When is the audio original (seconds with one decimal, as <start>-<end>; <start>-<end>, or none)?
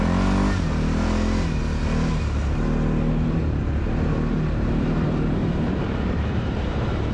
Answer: 0.0-5.4